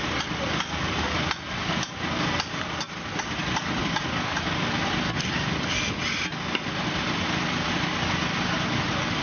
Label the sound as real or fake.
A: real